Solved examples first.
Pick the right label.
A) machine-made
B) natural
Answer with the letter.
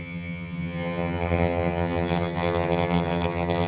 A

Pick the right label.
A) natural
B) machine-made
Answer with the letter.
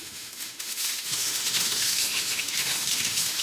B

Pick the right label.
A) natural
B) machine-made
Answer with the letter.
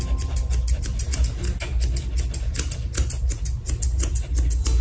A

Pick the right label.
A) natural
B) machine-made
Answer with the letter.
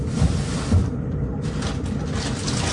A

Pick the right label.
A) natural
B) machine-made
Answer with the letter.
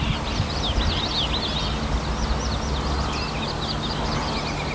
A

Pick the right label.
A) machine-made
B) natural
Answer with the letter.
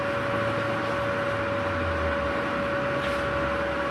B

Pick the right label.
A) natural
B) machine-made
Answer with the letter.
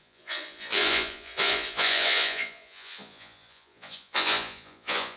B